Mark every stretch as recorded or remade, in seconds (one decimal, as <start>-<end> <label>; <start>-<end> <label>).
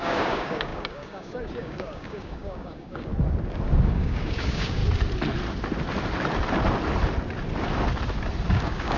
0.0-3.1 remade; 3.1-3.9 recorded; 3.9-4.8 remade; 4.8-8.5 recorded; 8.5-9.0 remade